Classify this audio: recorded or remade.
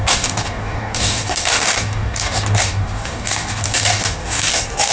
remade